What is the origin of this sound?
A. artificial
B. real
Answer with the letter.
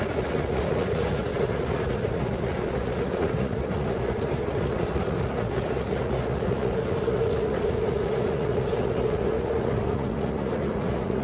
A